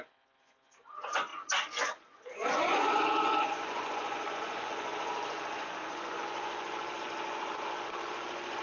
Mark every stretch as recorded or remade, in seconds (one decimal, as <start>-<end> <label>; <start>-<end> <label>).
0.0-8.6 remade